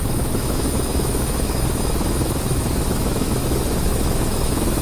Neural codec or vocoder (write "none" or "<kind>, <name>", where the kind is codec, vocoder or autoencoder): autoencoder, DAC-VAE